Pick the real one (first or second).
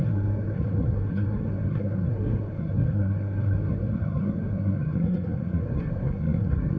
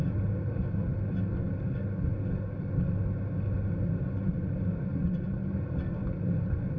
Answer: second